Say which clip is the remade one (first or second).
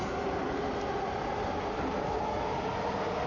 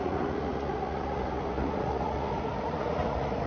second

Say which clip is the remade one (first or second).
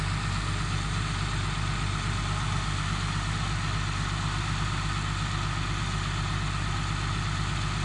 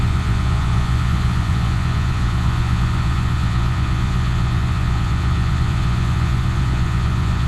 second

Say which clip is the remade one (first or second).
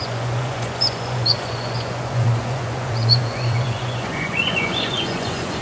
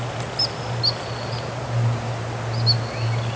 first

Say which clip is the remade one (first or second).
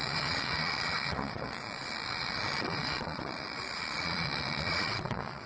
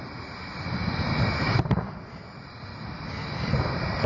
first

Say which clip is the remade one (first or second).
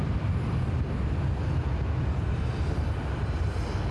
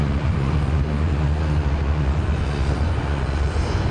second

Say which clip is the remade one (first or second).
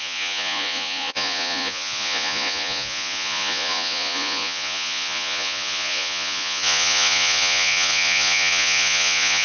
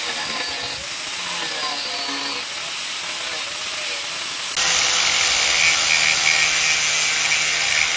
first